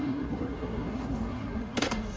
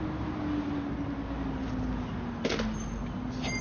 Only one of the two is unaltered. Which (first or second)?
second